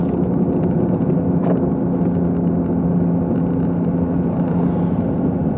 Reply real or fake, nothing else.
real